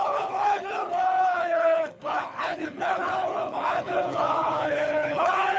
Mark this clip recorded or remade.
remade